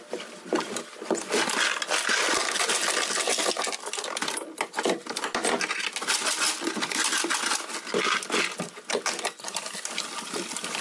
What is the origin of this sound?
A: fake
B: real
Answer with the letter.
B